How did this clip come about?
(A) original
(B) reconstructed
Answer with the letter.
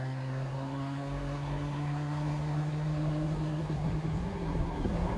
B